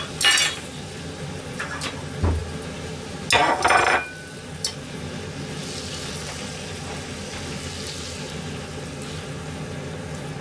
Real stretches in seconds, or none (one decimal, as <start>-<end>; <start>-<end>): 0.0-10.4